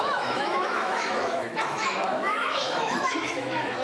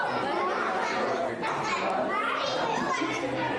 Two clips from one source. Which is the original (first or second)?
second